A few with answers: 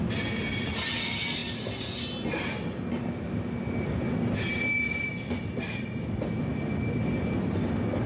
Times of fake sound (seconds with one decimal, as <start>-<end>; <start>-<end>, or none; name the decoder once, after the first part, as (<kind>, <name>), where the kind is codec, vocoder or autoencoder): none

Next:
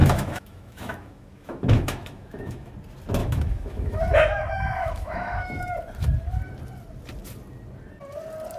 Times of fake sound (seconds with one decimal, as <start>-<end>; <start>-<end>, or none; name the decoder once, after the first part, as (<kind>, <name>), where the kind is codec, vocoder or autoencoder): 0.0-2.7 (autoencoder, DAC-VAE); 3.2-5.7

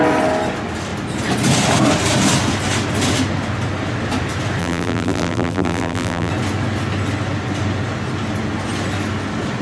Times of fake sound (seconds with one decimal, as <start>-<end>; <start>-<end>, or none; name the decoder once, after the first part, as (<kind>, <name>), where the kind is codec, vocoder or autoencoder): 4.6-6.3 (vocoder, BigVGAN v2)

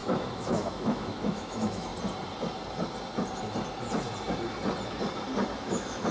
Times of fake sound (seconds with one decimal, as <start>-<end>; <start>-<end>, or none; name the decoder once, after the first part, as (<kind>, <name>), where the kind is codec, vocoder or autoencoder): 0.0-1.9 (autoencoder, DAC-VAE); 5.6-6.1

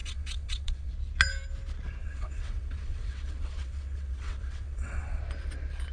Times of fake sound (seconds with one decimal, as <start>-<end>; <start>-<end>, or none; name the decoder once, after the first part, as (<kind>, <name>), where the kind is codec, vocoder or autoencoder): 0.0-0.9 (vocoder, WaveNeXt); 2.0-5.2

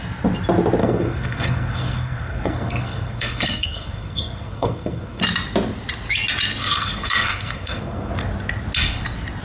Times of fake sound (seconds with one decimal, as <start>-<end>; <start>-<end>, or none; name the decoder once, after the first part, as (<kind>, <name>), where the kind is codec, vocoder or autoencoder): 0.8-5.2 (codec, SNAC); 6.6-8.1